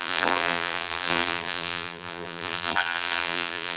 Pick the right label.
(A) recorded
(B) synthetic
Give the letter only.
B